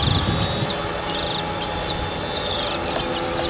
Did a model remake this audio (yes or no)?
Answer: no